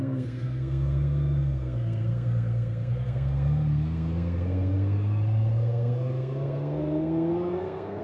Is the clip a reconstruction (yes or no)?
yes